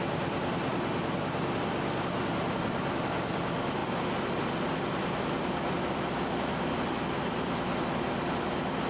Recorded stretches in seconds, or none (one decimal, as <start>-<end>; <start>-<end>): 0.0-8.9